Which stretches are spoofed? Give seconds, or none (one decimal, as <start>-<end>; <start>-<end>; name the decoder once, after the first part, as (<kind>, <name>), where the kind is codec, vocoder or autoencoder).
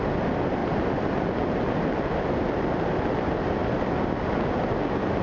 none